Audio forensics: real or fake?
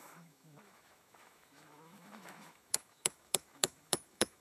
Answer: fake